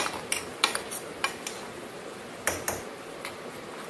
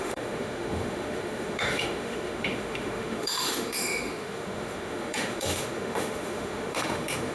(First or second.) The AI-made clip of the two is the second